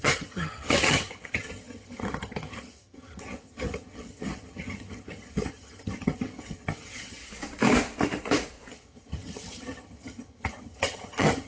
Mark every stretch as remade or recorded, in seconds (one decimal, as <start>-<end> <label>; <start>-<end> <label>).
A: 0.0-7.2 remade; 7.2-8.7 recorded; 8.7-11.5 remade